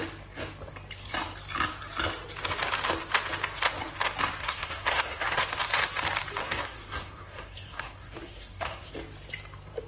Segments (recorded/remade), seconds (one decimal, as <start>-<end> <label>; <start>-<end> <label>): 0.0-4.4 recorded; 4.4-5.4 remade; 5.4-6.4 recorded; 6.4-8.9 remade; 8.9-9.9 recorded